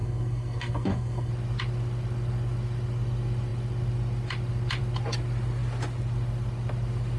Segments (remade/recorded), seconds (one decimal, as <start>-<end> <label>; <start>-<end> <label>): 0.0-1.3 remade; 1.3-7.2 recorded